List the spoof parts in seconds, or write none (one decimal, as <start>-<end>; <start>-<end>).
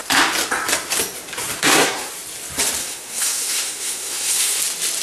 1.6-2.1; 2.8-4.6